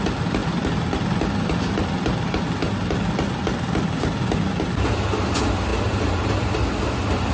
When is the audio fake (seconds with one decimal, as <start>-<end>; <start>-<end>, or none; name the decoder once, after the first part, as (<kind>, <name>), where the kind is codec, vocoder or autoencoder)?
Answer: none